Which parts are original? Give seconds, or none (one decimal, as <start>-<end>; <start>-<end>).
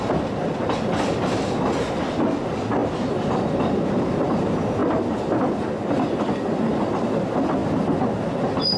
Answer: 0.0-7.6; 8.2-8.8